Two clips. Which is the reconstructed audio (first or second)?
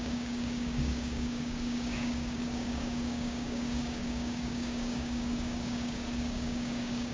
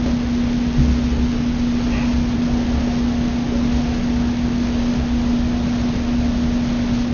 first